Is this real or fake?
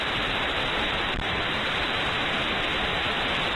fake